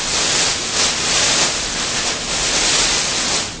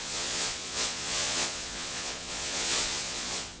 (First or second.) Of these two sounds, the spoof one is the second